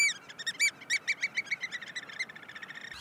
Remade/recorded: recorded